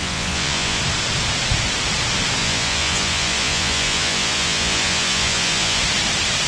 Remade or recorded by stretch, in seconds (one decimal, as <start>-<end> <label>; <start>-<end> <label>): 0.0-0.8 remade; 0.8-2.4 recorded; 2.4-5.8 remade; 5.8-6.5 recorded